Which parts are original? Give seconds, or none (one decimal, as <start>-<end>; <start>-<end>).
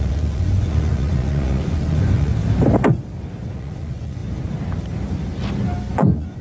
2.3-3.5; 4.2-5.9